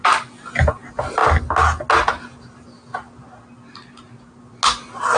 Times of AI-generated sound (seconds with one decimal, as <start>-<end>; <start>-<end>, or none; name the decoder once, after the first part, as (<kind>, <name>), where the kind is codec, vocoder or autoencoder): none